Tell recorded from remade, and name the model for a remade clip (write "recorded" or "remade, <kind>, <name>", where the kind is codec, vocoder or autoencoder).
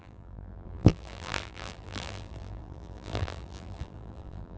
remade, vocoder, BigVGAN v2